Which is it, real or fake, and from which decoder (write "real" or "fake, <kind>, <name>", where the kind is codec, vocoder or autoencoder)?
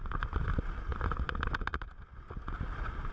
real